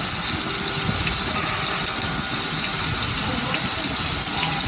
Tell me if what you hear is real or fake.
real